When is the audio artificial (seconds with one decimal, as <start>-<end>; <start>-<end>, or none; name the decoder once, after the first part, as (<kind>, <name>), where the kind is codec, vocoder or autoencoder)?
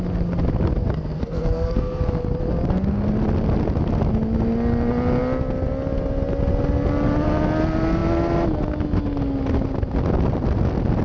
0.8-2.0 (codec, SNAC)